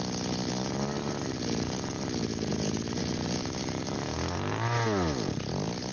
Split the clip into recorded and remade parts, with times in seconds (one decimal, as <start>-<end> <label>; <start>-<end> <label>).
0.0-5.9 recorded